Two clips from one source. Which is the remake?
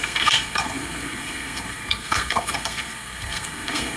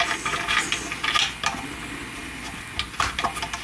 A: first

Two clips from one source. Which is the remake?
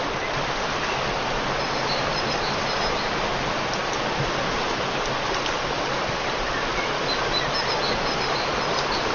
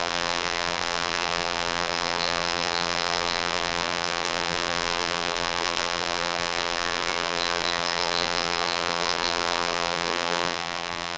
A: second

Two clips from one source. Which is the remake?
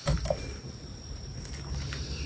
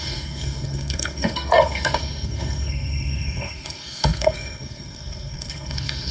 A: second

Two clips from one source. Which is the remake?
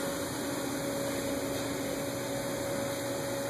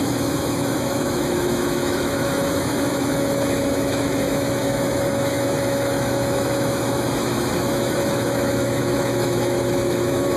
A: second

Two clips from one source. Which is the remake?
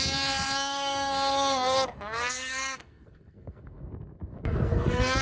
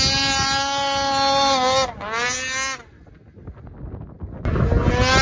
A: first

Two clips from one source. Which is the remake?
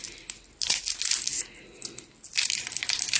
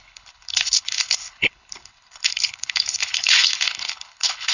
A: second